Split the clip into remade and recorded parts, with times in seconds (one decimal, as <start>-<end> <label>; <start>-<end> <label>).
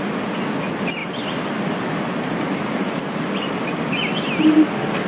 0.0-5.1 recorded